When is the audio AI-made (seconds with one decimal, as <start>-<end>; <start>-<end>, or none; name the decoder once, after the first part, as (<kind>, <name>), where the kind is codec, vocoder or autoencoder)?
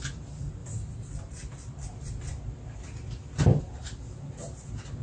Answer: none